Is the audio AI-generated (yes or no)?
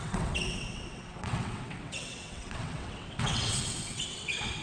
yes